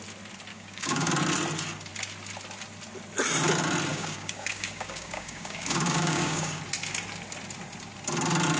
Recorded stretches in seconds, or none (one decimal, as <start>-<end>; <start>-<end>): 0.0-0.5; 1.1-3.9; 6.6-8.6